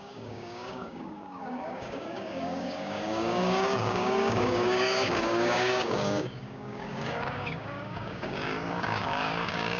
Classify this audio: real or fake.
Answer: fake